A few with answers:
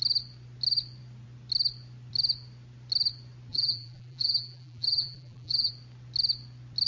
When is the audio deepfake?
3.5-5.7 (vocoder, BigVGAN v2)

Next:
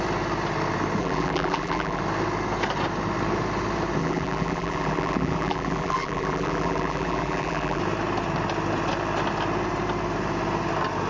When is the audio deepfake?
1.0-2.0 (vocoder, BigVGAN v2); 4.0-7.8

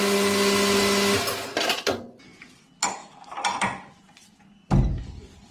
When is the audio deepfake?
1.3-2.6 (vocoder, BigVGAN v2); 3.0-4.4